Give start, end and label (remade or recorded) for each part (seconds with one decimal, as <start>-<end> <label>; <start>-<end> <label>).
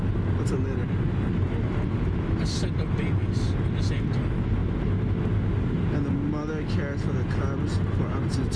0.0-8.6 recorded